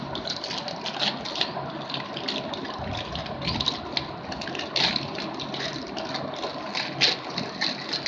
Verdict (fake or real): real